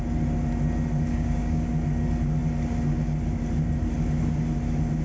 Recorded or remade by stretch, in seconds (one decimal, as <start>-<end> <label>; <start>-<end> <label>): 0.0-1.1 recorded; 1.1-1.7 remade; 1.7-5.0 recorded